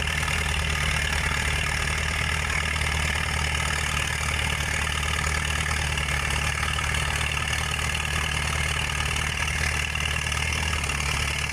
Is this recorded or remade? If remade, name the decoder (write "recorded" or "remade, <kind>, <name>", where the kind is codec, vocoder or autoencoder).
recorded